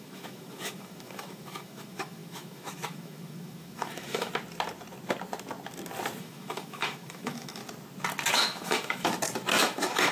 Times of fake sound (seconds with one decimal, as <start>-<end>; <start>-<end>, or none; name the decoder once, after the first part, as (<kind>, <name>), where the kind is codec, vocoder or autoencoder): 0.0-4.3 (autoencoder, DAC-VAE); 6.2-7.6; 8.3-9.1; 9.6-10.1